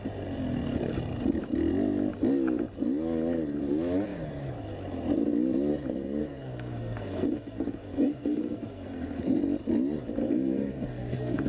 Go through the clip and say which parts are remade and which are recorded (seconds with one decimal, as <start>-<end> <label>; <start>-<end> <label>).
0.0-6.2 recorded; 6.2-9.4 remade; 9.4-10.2 recorded; 10.2-11.5 remade